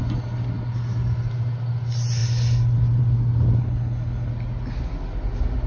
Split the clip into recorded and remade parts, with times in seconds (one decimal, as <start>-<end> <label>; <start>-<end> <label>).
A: 0.0-3.6 recorded; 3.6-4.3 remade; 4.3-5.7 recorded